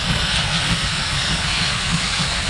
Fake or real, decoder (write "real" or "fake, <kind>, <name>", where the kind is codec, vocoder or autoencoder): fake, codec, SNAC